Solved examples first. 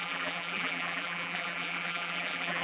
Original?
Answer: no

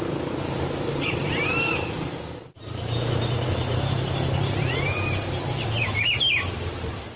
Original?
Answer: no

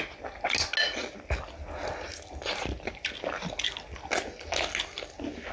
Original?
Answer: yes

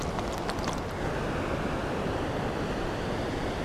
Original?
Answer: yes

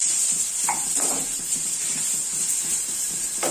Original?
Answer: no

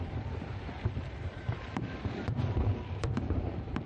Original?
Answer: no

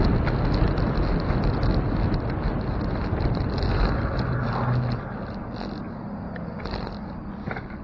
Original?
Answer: yes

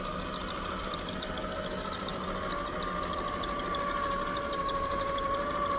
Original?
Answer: yes